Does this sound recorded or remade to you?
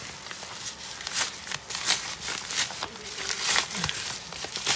recorded